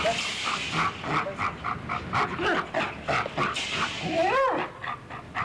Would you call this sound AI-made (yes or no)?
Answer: no